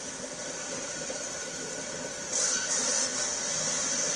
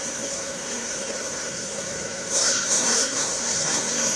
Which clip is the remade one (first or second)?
second